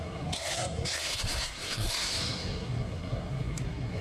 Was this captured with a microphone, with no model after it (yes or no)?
no